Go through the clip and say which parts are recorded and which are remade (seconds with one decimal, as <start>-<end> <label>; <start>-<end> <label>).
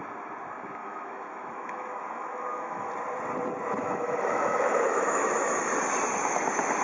0.0-0.8 recorded; 0.8-2.9 remade; 2.9-3.8 recorded; 3.8-5.3 remade; 5.3-6.8 recorded